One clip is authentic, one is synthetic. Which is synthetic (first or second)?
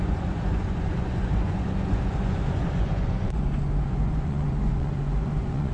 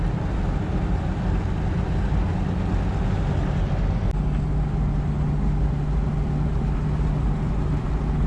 first